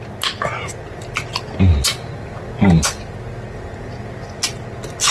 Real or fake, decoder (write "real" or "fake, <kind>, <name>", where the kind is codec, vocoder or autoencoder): real